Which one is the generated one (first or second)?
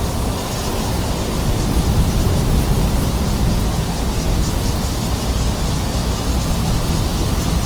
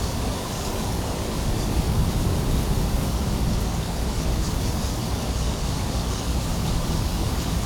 second